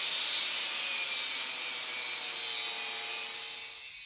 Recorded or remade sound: recorded